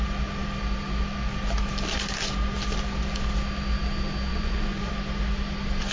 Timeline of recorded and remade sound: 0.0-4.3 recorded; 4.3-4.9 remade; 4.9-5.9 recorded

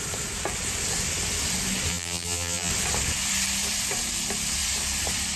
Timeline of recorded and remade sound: 0.0-1.9 recorded; 1.9-2.7 remade; 2.7-5.4 recorded

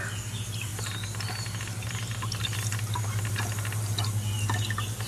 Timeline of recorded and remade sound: 0.0-5.1 recorded

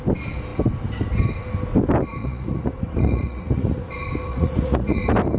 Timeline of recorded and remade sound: 0.0-2.2 recorded; 2.2-3.9 remade; 3.9-4.3 recorded; 4.3-5.0 remade; 5.0-5.4 recorded

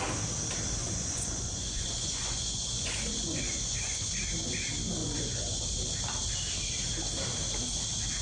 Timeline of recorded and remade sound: 0.0-0.8 recorded; 0.8-4.2 remade; 4.2-5.0 recorded; 5.0-5.6 remade; 5.6-8.2 recorded